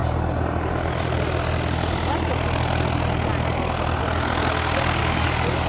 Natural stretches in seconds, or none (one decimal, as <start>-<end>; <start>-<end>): 0.0-5.0